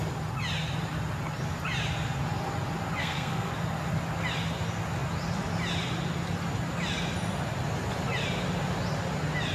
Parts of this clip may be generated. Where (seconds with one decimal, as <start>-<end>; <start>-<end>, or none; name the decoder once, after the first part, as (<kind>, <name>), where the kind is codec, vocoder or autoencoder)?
3.0-3.5 (codec, SNAC)

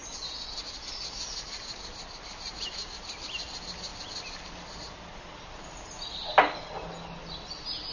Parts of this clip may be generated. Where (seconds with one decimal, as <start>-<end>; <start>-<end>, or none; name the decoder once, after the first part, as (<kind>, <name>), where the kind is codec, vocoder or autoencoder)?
none